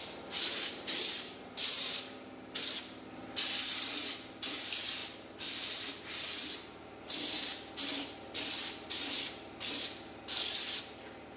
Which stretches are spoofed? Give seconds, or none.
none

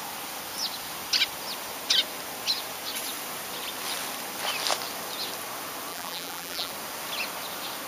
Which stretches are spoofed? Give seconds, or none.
5.9-6.7 (vocoder, BigVGAN v2)